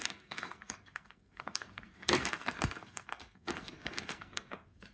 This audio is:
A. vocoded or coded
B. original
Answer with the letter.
A